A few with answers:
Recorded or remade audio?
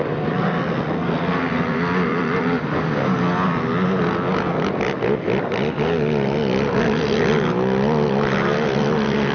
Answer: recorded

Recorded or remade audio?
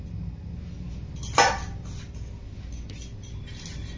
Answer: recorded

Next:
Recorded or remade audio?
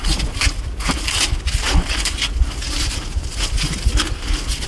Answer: recorded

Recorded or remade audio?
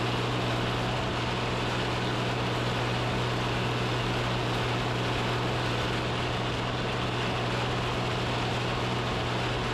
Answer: recorded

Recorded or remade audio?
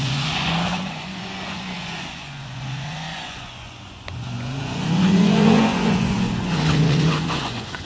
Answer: remade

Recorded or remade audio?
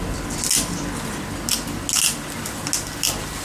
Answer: recorded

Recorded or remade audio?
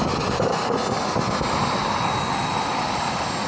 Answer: recorded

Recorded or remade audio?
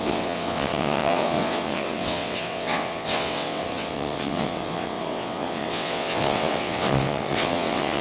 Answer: remade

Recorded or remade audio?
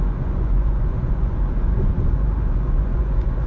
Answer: remade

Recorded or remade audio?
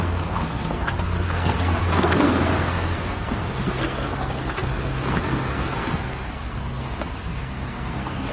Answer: remade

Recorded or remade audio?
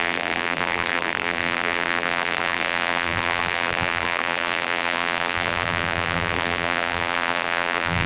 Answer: remade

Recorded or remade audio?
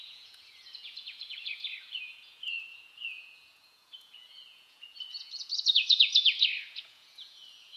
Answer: remade